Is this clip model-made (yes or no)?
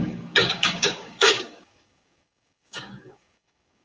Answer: yes